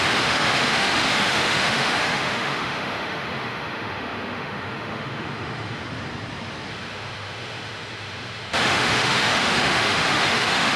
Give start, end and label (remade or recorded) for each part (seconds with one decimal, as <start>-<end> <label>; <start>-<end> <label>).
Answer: 0.0-5.8 remade; 5.8-6.7 recorded; 6.7-10.8 remade